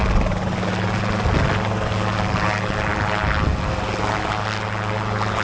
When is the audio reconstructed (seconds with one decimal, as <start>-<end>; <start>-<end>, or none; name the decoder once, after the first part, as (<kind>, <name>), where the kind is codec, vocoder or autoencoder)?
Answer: none